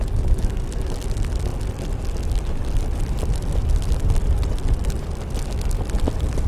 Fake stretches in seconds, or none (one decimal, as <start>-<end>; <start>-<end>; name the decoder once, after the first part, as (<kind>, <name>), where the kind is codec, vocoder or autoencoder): none